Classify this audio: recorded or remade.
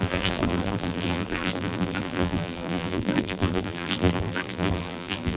remade